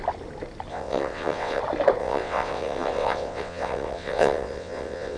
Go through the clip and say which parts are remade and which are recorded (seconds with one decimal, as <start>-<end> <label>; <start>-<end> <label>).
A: 0.0-0.7 recorded; 0.7-1.6 remade; 1.6-2.0 recorded; 2.0-5.2 remade